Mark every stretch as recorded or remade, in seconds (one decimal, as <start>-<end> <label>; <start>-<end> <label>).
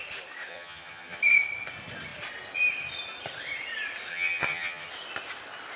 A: 0.0-0.5 recorded; 0.5-1.2 remade; 1.2-4.1 recorded; 4.1-4.9 remade; 4.9-5.8 recorded